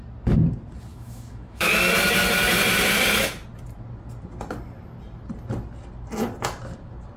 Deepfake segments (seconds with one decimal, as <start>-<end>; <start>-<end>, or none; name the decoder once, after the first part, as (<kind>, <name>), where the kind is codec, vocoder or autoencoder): 0.9-1.7 (autoencoder, DAC-VAE)